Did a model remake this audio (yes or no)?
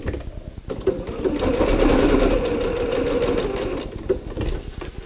no